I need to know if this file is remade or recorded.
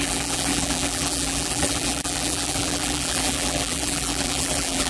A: remade